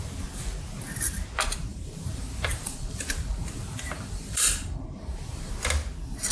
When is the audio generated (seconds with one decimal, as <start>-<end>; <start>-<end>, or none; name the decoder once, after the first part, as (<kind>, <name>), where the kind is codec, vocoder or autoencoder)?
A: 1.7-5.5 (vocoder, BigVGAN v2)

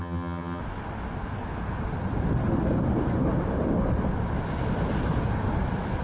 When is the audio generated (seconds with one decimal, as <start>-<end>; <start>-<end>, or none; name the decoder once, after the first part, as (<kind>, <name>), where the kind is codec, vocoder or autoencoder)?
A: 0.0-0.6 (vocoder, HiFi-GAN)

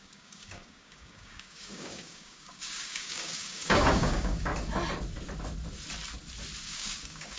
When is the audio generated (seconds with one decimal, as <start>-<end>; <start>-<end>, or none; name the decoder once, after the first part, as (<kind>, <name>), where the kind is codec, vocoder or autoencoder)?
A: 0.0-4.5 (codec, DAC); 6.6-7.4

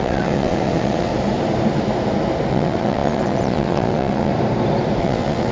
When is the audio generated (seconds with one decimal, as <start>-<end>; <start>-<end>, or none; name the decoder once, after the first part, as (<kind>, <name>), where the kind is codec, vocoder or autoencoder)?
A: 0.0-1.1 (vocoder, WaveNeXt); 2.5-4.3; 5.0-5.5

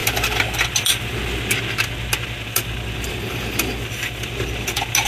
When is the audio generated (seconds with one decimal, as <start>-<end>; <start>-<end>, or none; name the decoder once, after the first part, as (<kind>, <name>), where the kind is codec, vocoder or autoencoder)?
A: none